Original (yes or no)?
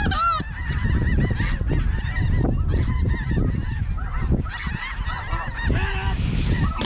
yes